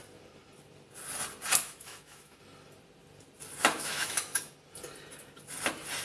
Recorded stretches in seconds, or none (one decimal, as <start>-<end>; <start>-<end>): 0.0-1.6; 2.4-3.6; 4.5-6.0